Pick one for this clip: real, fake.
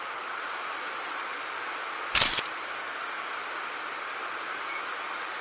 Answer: real